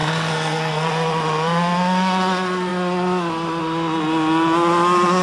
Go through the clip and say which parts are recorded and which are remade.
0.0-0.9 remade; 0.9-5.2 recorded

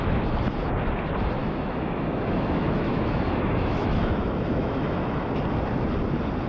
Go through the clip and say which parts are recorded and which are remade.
0.0-1.4 recorded; 1.4-5.3 remade; 5.3-6.5 recorded

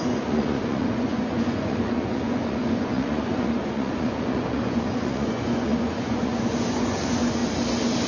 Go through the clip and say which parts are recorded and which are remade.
0.0-7.4 remade; 7.4-8.1 recorded

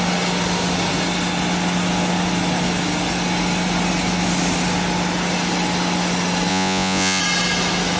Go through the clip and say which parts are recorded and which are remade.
0.0-6.5 recorded; 6.5-7.2 remade; 7.2-8.0 recorded

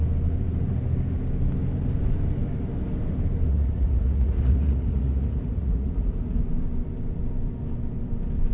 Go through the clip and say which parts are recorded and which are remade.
0.0-3.5 recorded; 3.5-6.4 remade; 6.4-8.5 recorded

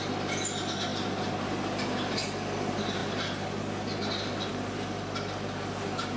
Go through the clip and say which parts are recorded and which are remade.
0.0-6.2 recorded

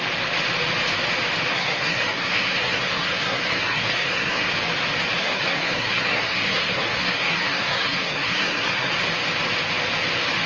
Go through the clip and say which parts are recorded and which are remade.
0.0-1.5 recorded; 1.5-4.5 remade; 4.5-5.2 recorded; 5.2-8.9 remade; 8.9-10.5 recorded